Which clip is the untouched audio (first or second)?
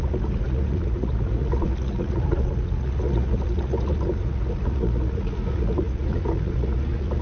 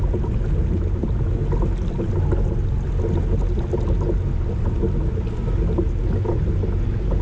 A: second